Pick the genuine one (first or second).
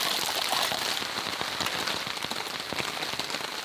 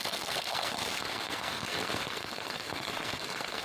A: first